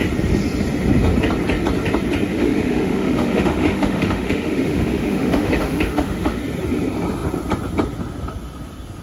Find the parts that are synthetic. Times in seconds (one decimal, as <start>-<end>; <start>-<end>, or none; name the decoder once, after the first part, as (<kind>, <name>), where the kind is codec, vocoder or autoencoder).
2.3-6.4 (autoencoder, DAC-VAE)